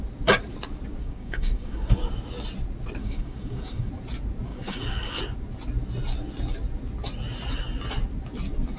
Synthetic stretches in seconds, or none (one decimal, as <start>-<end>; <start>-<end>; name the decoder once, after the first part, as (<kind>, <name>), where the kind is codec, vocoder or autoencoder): 1.0-2.1 (codec, DAC); 3.0-3.9; 4.5-5.2